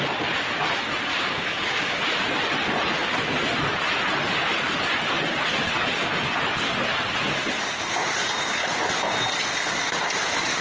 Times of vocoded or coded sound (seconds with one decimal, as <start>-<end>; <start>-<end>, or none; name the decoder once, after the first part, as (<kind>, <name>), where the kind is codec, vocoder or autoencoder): 1.1-2.0 (codec, DAC)